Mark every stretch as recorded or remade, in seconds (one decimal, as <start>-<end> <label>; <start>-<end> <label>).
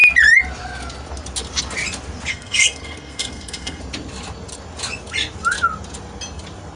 0.0-2.3 recorded; 2.3-3.8 remade; 3.8-6.8 recorded